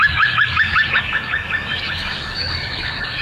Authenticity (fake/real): fake